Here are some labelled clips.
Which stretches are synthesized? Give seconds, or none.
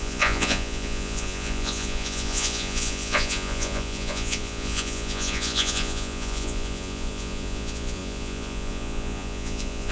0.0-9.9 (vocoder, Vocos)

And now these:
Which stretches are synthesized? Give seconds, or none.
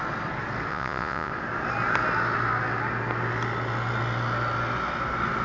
0.7-1.3 (vocoder, Vocos)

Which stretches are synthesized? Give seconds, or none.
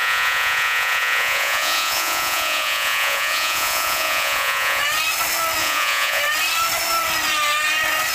0.0-4.8 (vocoder, Vocos); 5.6-6.2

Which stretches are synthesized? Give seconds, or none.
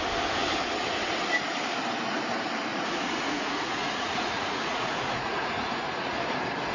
2.7-6.2 (vocoder, Vocos)